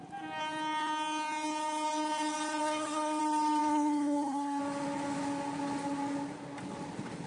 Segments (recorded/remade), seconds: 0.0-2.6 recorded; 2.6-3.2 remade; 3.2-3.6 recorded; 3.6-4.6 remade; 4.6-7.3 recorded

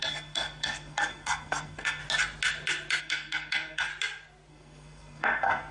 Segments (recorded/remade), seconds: 0.0-2.0 remade; 2.0-3.0 recorded; 3.0-3.9 remade; 3.9-4.5 recorded; 4.5-5.7 remade

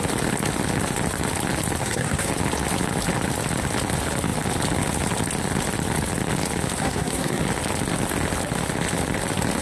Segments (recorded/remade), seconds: 0.0-1.8 recorded; 1.8-2.3 remade; 2.3-6.8 recorded; 6.8-7.4 remade; 7.4-9.6 recorded